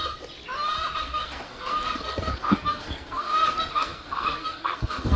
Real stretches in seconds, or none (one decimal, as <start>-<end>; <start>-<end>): 0.0-1.0

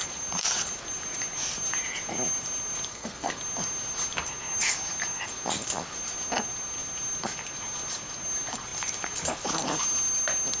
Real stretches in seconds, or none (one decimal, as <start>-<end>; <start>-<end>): 0.0-2.9; 3.4-10.6

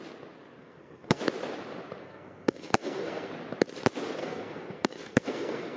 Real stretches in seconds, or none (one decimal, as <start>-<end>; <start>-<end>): 0.0-0.6; 1.2-2.0; 3.3-4.2

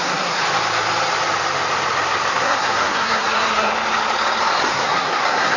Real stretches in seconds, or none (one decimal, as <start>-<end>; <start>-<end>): 0.4-2.3; 3.7-4.7

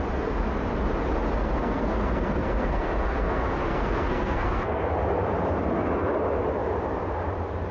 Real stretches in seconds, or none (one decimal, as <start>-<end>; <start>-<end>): 0.0-1.4; 4.8-7.7